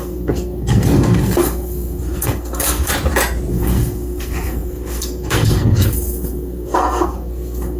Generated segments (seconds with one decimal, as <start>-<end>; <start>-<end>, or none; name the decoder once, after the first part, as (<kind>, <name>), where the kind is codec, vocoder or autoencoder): 0.0-2.9 (codec, SNAC); 3.5-7.8